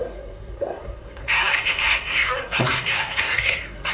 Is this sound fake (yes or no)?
yes